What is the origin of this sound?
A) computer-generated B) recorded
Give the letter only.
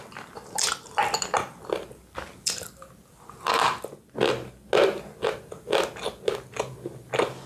B